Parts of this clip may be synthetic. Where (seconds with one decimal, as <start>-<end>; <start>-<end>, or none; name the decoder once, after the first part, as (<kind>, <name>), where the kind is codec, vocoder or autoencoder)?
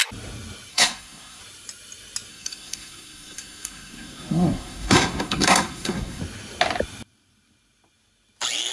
0.7-1.4 (codec, SNAC); 2.3-6.2